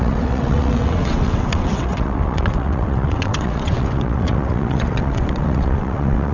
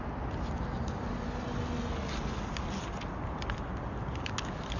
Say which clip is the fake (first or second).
first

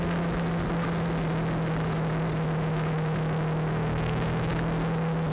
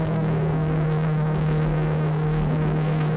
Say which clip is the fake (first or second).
second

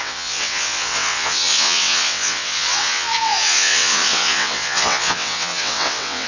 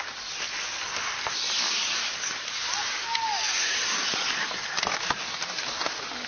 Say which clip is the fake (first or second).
first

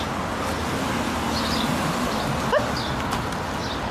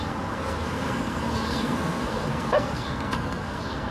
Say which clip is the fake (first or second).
second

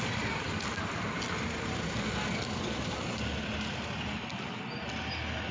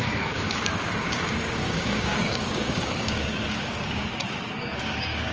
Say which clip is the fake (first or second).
second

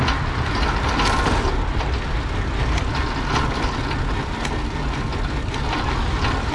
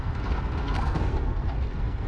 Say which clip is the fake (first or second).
second